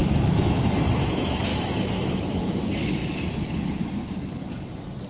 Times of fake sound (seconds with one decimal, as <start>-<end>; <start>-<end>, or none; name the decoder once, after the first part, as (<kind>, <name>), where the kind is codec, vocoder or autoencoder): 0.0-0.6 (autoencoder, DAC-VAE); 1.5-2.3